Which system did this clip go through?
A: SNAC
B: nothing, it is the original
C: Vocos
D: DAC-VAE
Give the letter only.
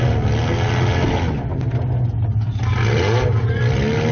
B